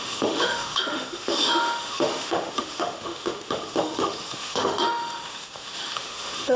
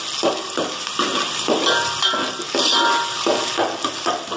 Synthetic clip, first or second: first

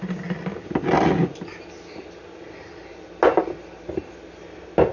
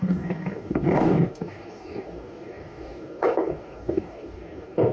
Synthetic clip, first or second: second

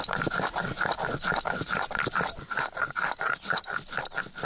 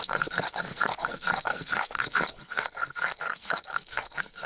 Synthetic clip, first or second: second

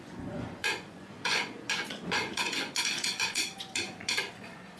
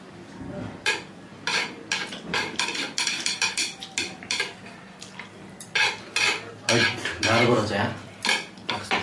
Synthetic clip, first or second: first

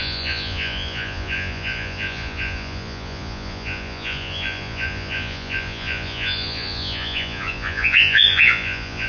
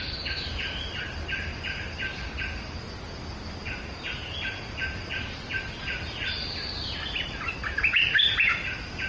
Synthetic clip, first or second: first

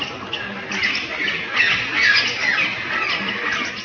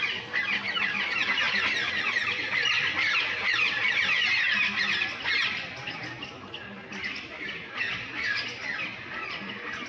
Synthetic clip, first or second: second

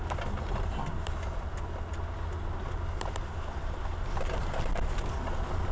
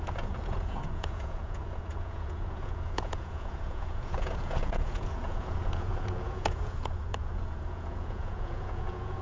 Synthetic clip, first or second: second